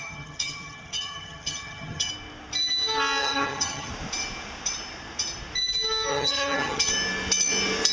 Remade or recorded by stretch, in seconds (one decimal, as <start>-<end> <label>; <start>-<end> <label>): 0.0-2.1 remade; 2.1-3.2 recorded; 3.2-3.9 remade; 3.9-6.1 recorded; 6.1-6.9 remade; 6.9-7.9 recorded